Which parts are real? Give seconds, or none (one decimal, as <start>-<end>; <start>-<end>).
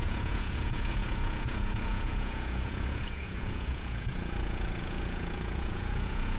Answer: none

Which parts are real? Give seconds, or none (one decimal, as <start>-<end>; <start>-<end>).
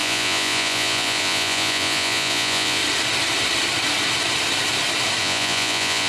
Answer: 2.8-5.2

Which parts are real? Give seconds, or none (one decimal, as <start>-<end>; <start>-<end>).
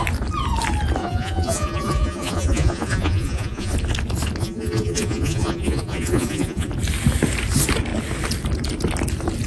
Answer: 0.0-1.0; 3.7-4.4; 6.7-9.5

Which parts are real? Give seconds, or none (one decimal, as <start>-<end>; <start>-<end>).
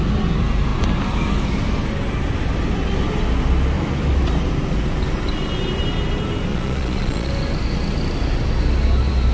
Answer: 0.0-6.5; 7.3-9.3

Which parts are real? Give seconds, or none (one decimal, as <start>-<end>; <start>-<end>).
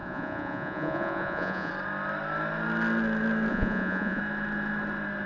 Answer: 1.7-3.5; 4.2-5.3